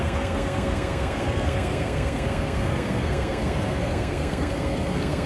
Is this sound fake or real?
fake